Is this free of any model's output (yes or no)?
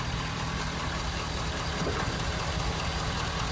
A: yes